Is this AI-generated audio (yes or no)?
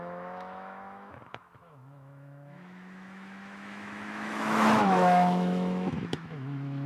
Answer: yes